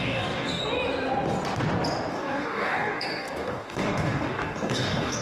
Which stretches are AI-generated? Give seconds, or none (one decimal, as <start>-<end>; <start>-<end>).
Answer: 0.0-0.6; 2.1-5.2